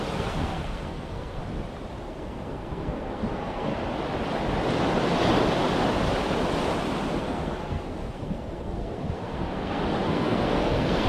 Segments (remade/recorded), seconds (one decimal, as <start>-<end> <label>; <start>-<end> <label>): 0.0-1.4 remade; 1.4-2.0 recorded; 2.0-3.7 remade; 3.7-7.2 recorded; 7.2-11.1 remade